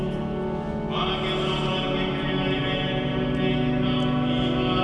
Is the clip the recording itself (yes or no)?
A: yes